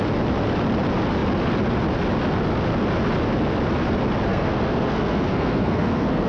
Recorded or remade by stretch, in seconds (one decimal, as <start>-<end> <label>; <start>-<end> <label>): 0.0-4.3 recorded; 4.3-6.3 remade